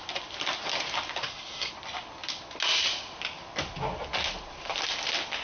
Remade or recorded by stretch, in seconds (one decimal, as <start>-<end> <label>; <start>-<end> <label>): 0.0-1.2 recorded; 1.2-1.7 remade; 1.7-5.4 recorded